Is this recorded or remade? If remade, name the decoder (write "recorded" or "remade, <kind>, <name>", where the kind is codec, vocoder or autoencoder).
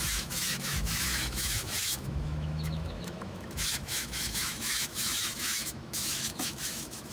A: remade, autoencoder, DAC-VAE